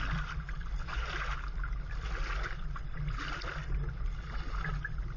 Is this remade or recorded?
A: remade